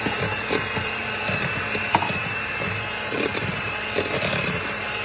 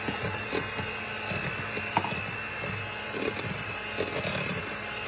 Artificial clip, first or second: first